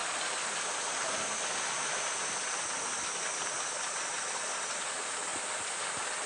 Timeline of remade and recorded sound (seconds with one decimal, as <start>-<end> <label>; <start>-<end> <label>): 0.0-6.3 recorded